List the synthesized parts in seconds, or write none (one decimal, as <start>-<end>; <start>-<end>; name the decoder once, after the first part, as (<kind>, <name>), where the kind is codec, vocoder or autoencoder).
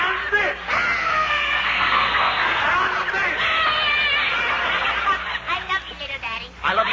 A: 1.0-2.6 (codec, SNAC)